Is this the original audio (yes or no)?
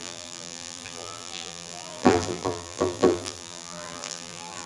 no